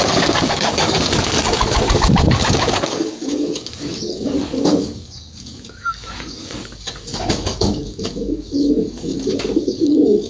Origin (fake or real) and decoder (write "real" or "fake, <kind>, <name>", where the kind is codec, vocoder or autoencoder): fake, codec, DAC